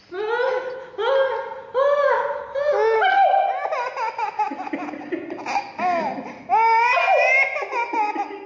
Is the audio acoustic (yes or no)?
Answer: yes